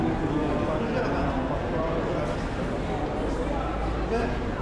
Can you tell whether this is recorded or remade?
recorded